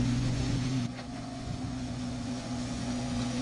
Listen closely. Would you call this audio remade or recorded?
remade